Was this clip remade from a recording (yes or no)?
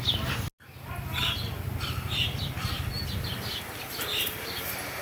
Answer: no